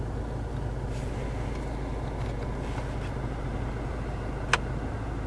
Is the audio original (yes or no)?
yes